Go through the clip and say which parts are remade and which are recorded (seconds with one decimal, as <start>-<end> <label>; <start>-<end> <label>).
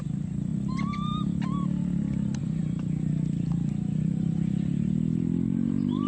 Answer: 0.0-6.1 recorded